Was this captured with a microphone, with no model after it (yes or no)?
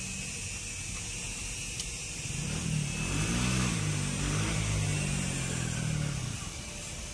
yes